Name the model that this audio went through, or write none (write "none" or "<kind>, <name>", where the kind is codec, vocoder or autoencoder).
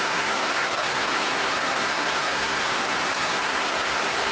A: codec, SNAC